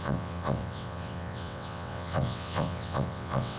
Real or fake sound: fake